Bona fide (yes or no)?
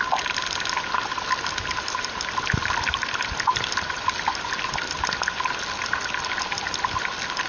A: yes